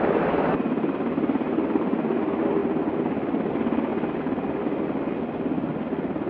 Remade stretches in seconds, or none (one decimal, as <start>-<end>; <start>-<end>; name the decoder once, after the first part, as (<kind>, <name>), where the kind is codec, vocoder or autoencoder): none